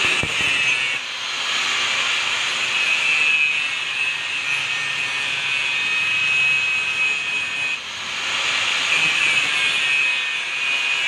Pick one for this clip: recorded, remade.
recorded